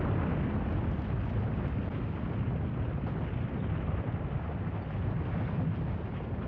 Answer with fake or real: real